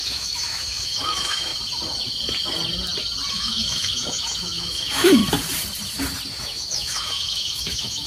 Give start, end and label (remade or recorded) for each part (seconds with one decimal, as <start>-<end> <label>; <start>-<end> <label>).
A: 0.0-1.5 remade; 1.5-3.3 recorded; 3.3-5.2 remade; 5.2-6.4 recorded; 6.4-8.1 remade